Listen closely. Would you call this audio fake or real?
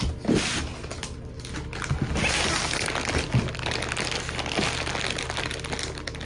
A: real